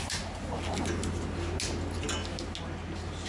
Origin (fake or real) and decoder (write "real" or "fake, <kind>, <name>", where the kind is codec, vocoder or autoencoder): real